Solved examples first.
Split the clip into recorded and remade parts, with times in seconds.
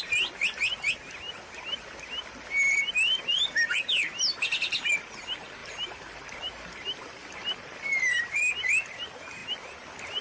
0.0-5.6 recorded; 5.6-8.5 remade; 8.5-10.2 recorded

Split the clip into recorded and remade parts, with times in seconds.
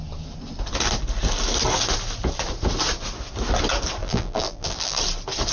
0.0-4.0 recorded; 4.0-5.0 remade; 5.0-5.5 recorded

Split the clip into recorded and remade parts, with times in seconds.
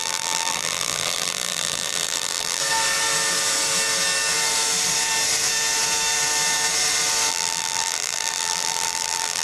0.0-2.6 remade; 2.6-7.3 recorded; 7.3-9.4 remade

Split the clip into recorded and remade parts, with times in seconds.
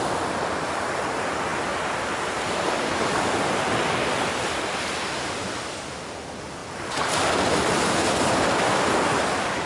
0.0-1.5 remade; 1.5-2.5 recorded; 2.5-9.7 remade